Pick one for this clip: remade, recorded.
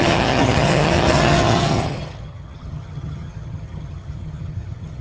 remade